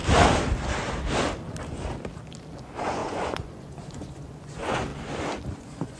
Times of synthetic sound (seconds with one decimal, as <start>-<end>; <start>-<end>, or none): 2.6-4.9; 5.6-6.0